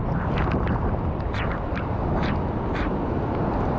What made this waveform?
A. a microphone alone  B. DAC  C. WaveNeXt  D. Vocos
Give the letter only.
A